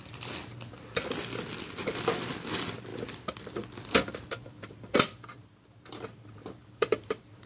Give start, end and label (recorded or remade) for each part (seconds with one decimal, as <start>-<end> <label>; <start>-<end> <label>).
0.0-0.4 remade; 0.4-1.9 recorded; 1.9-7.5 remade